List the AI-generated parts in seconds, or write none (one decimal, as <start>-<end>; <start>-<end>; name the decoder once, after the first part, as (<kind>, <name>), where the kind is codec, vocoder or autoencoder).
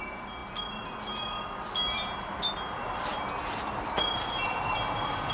none